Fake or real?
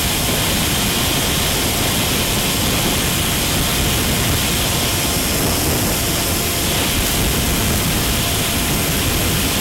real